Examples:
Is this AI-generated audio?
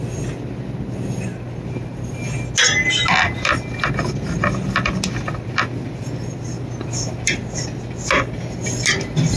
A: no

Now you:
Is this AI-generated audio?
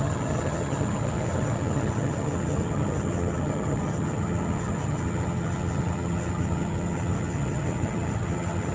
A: yes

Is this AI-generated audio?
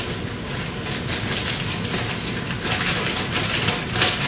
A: no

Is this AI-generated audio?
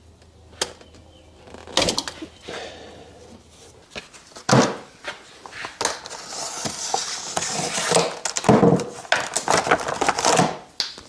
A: no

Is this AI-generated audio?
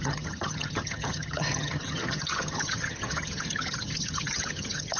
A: yes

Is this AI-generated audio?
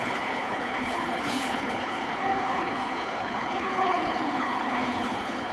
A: yes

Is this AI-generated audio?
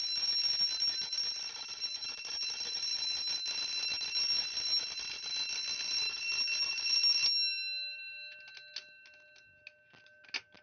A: no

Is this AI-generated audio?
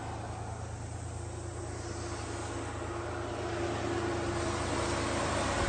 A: no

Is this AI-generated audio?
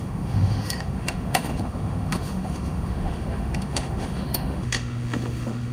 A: yes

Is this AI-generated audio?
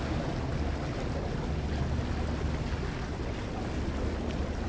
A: no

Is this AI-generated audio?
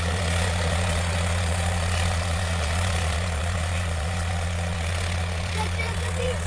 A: yes